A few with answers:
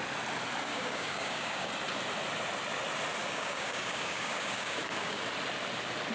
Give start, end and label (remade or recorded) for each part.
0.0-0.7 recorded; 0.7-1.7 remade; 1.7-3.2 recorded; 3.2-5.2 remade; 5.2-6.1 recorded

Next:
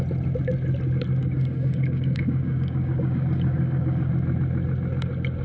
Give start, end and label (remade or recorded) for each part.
0.0-1.2 recorded; 1.2-4.1 remade; 4.1-5.4 recorded

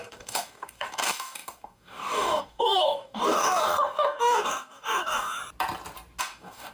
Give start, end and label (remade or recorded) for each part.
0.0-5.4 remade; 5.4-6.2 recorded; 6.2-6.7 remade

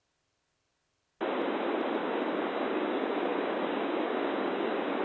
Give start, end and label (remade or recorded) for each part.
0.0-2.0 recorded; 2.0-5.0 remade

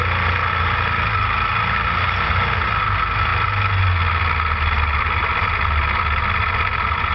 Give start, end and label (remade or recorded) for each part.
0.0-7.1 recorded